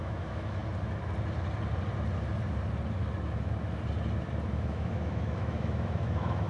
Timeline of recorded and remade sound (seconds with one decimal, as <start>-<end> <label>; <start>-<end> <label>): 0.0-0.6 remade; 0.6-4.5 recorded; 4.5-6.5 remade